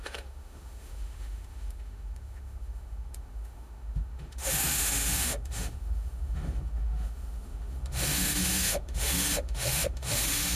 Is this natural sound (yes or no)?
no